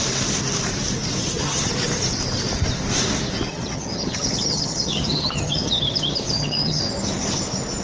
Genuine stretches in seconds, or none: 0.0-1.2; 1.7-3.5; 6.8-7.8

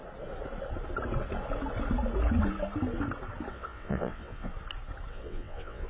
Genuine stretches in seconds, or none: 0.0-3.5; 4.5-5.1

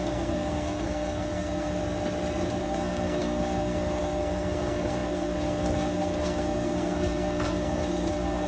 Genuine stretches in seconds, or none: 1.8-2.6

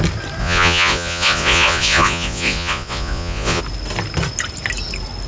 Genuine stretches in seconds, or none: 0.0-0.4; 3.6-5.3

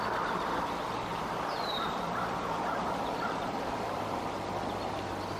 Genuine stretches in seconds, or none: 0.0-1.1; 4.2-5.4

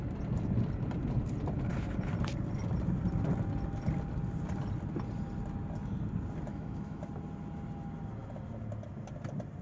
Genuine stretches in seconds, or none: 0.0-6.5; 7.0-9.6

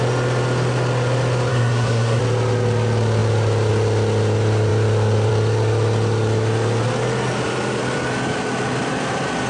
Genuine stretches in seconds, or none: 0.0-1.5; 2.2-9.5